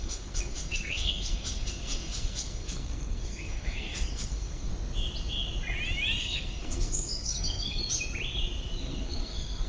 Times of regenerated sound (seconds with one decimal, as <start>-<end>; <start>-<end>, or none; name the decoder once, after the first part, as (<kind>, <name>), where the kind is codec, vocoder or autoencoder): 0.0-4.7 (codec, SNAC); 6.2-7.8; 8.8-9.7